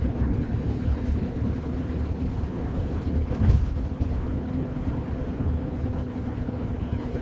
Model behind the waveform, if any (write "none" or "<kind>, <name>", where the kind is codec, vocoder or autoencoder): codec, HILCodec